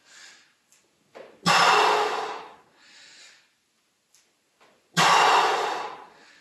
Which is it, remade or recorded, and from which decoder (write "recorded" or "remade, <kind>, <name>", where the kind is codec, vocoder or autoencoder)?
recorded